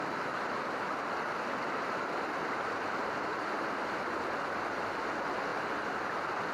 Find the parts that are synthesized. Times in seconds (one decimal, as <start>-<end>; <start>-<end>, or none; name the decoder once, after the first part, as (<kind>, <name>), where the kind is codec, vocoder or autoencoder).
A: 3.3-4.0 (vocoder, BigVGAN v2)